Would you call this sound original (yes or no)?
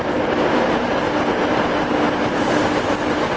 yes